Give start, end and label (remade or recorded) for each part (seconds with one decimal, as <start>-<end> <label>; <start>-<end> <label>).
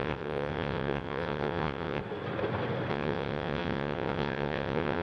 0.0-2.0 remade; 2.0-2.9 recorded; 2.9-5.0 remade